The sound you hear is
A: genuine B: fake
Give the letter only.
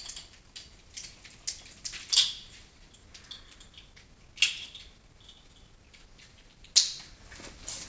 A